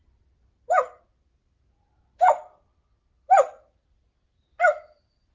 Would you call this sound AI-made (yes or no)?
no